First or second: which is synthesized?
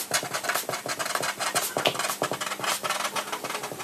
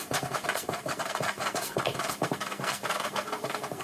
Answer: second